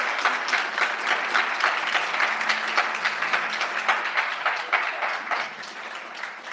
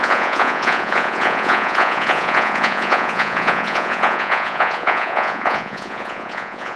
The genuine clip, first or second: first